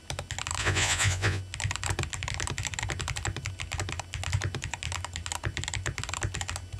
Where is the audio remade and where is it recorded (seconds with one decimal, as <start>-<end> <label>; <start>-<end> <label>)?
0.0-0.6 recorded; 0.6-1.4 remade; 1.4-6.8 recorded